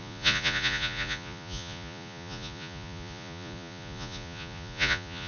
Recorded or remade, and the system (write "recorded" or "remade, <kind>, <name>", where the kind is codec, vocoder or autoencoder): remade, vocoder, Vocos